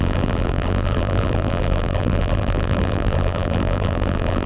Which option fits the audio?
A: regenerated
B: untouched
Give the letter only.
A